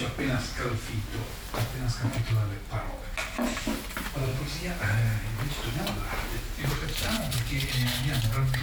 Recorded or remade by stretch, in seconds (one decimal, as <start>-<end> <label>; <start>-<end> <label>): 0.0-8.6 recorded